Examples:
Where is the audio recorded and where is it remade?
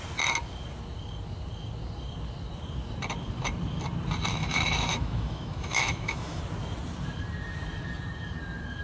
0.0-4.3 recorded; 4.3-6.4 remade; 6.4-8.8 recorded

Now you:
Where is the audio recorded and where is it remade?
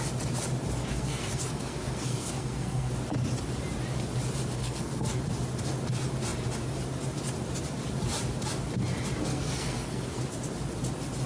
0.0-0.8 recorded; 0.8-2.9 remade; 2.9-4.6 recorded; 4.6-5.2 remade; 5.2-9.3 recorded; 9.3-10.2 remade; 10.2-11.3 recorded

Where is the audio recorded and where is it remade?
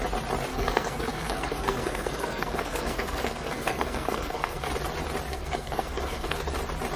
0.0-0.5 recorded; 0.5-4.7 remade; 4.7-5.3 recorded; 5.3-6.4 remade; 6.4-7.0 recorded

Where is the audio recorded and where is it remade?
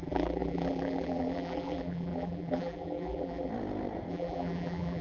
0.0-3.5 remade; 3.5-4.1 recorded; 4.1-5.0 remade